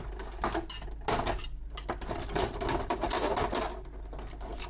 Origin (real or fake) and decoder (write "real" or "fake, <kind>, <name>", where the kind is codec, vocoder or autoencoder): real